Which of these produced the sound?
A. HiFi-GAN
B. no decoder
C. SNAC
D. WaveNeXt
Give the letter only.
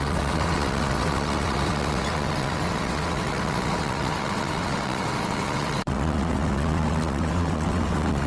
D